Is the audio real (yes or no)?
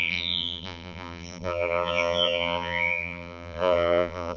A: no